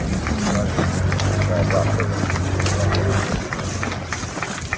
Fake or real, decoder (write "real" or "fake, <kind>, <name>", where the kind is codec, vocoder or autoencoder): real